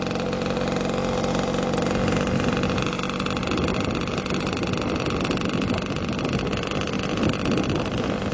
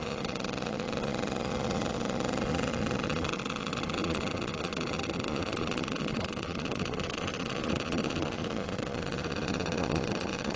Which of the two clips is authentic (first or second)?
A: first